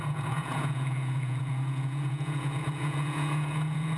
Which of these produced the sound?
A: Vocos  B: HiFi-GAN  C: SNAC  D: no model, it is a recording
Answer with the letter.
A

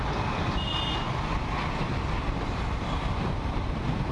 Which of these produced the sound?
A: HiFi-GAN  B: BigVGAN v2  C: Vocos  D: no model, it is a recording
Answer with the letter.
D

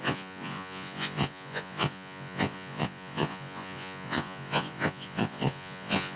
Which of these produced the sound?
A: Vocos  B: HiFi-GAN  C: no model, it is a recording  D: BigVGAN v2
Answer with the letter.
A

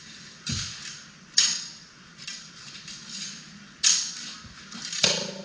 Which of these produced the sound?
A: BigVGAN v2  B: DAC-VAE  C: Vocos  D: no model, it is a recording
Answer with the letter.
D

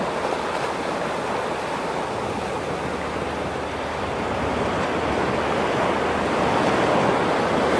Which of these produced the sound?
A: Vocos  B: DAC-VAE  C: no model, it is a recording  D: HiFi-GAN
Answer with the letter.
C